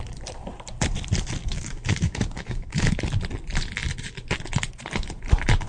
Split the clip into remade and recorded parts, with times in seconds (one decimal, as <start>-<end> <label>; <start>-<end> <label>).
0.0-1.4 recorded; 1.4-3.0 remade; 3.0-5.7 recorded